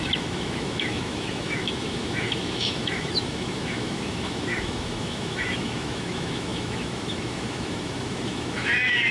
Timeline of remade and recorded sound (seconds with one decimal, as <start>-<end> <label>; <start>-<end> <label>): 0.0-9.1 remade